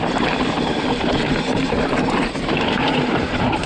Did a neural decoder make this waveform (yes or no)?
yes